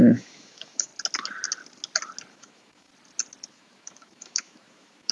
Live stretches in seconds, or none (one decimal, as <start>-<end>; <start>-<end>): 0.9-2.3; 2.9-3.5